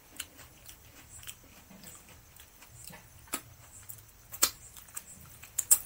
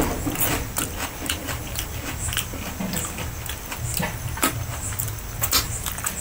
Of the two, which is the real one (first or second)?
second